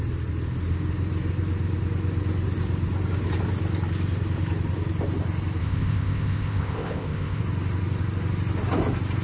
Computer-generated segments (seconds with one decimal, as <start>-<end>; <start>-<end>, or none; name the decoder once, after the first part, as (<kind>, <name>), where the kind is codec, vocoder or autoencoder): 5.6-7.4 (codec, ZipCodec)